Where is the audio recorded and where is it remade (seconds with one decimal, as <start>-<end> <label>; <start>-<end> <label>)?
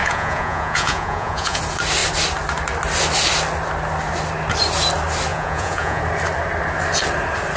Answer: 0.0-1.6 remade; 1.6-5.3 recorded; 5.3-6.0 remade; 6.0-7.6 recorded